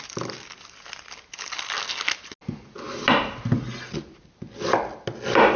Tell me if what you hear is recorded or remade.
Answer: recorded